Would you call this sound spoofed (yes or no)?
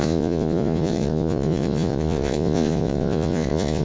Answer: yes